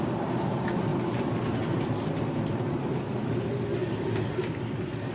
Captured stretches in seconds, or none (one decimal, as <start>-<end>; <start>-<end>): 0.0-5.1